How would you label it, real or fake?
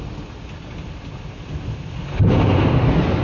real